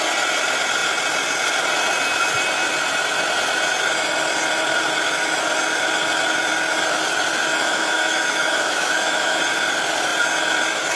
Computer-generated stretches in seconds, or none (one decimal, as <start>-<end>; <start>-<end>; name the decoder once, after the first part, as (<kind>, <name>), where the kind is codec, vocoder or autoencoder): 7.6-9.4 (autoencoder, DAC-VAE)